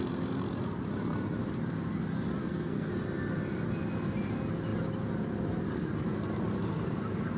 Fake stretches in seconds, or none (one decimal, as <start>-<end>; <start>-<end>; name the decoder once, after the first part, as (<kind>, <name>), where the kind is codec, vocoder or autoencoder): 2.4-2.9 (codec, SNAC)